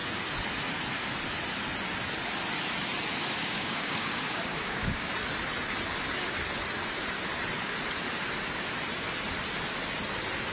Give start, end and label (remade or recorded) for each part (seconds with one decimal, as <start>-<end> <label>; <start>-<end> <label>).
0.0-3.4 recorded; 3.4-5.1 remade; 5.1-10.5 recorded